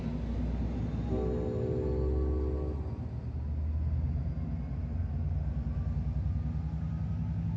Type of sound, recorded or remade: recorded